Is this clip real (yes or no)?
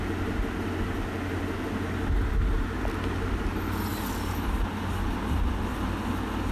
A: yes